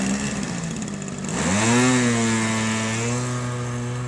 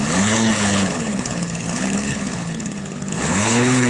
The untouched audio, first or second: first